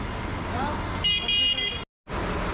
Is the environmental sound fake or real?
real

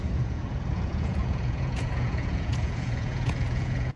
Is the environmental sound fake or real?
fake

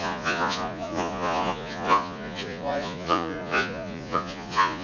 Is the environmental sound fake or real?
fake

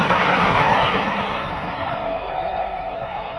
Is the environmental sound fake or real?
fake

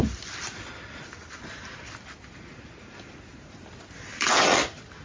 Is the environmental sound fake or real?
real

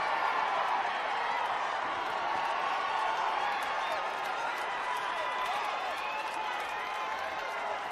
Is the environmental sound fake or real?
fake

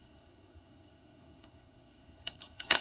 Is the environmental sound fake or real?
fake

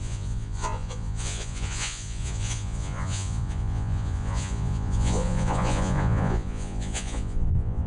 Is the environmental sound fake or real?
fake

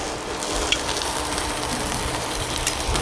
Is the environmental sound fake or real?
fake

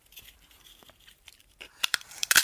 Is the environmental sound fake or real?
fake